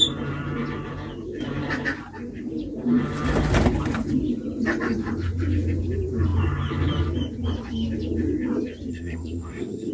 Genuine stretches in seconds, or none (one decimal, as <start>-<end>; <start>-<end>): 0.0-8.9